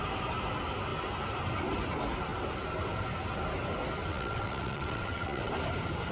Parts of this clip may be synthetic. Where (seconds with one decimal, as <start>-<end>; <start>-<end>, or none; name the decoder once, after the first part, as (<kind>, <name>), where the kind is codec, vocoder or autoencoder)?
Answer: 4.1-5.5 (vocoder, WaveNeXt)